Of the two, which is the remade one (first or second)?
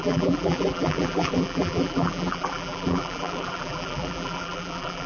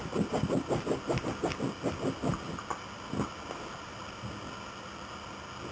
first